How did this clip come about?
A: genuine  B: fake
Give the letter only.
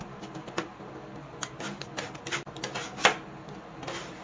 A